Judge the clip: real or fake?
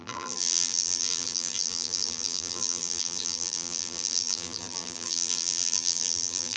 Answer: fake